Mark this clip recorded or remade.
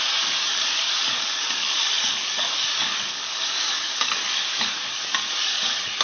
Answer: remade